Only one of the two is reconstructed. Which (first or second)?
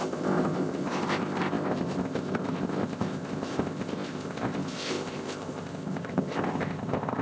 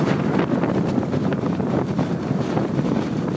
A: first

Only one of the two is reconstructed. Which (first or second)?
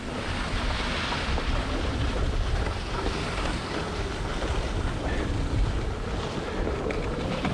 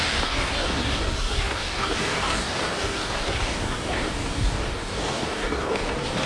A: second